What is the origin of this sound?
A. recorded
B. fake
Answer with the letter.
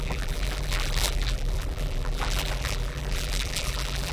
B